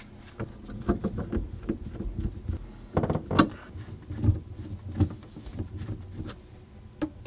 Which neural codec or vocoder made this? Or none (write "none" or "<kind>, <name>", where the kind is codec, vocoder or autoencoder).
none